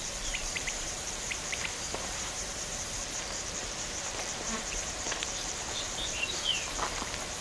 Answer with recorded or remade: remade